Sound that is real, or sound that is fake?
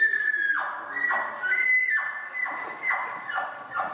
real